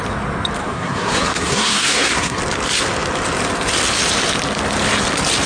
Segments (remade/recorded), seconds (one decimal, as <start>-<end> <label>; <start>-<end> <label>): 0.0-0.6 recorded; 0.6-2.4 remade; 2.4-5.5 recorded